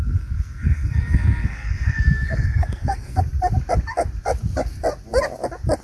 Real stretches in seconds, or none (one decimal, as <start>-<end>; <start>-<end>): 3.2-5.8